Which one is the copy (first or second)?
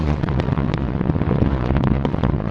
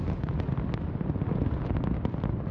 first